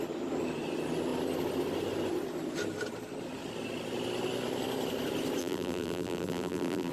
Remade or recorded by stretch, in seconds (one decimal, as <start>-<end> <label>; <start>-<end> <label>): 0.0-5.4 recorded; 5.4-6.9 remade